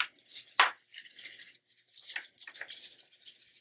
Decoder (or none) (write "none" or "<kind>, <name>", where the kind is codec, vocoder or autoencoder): none